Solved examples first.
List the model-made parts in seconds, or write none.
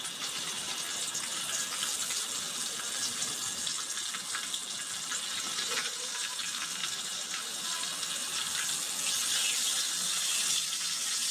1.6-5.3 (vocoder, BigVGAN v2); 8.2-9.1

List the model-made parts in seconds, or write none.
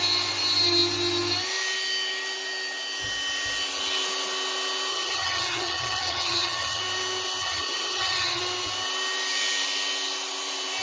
4.9-6.8 (vocoder, HiFi-GAN); 7.4-8.4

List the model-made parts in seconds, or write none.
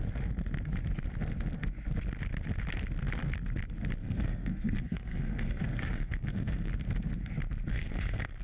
4.0-6.7 (codec, SNAC); 7.7-8.4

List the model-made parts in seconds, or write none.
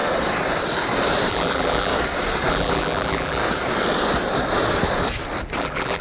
1.3-1.9 (vocoder, BigVGAN v2); 2.5-3.4; 5.6-6.0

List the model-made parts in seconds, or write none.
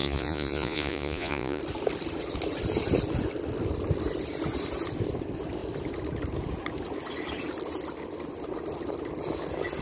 0.0-1.6 (vocoder, Vocos)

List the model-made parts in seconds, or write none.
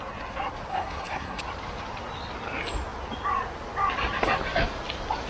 0.7-1.4 (codec, SNAC)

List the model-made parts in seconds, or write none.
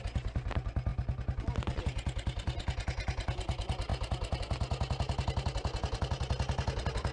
none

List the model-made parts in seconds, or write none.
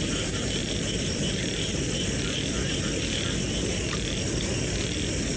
0.6-1.4 (vocoder, BigVGAN v2)